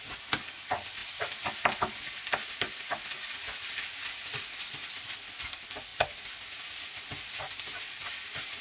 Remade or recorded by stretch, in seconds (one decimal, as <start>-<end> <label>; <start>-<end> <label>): 0.0-8.6 recorded